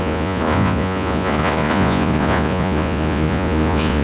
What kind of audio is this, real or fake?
fake